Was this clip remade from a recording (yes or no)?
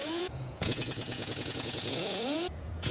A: yes